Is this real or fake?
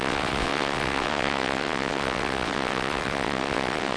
fake